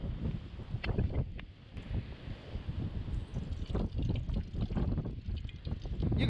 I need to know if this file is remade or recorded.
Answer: recorded